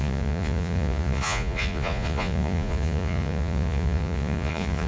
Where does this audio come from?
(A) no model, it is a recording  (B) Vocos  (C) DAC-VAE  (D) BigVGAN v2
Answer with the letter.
B